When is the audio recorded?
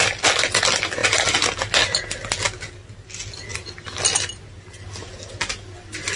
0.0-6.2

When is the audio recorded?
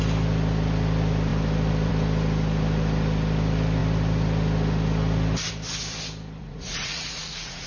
0.0-6.4